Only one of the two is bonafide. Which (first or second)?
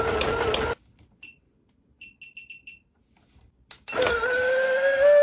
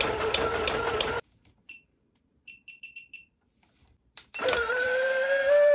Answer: first